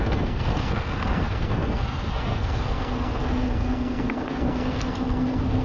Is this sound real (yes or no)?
no